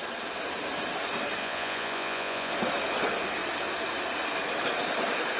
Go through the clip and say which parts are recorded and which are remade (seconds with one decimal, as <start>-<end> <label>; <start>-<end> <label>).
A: 0.0-1.4 recorded; 1.4-2.5 remade; 2.5-5.4 recorded